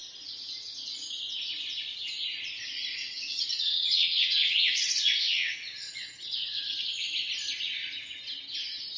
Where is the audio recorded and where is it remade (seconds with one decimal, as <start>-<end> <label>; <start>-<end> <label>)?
0.0-3.0 recorded; 3.0-7.3 remade; 7.3-9.0 recorded